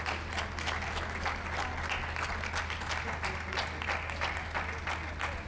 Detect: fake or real real